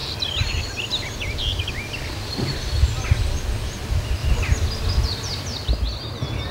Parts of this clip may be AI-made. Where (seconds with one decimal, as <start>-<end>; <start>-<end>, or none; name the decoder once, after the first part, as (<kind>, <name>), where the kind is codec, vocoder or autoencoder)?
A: none